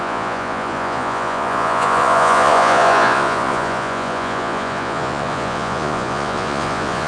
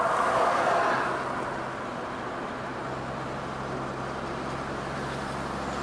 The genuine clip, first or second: second